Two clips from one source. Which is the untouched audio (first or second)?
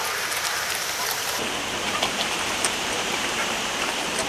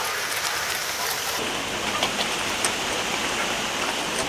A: second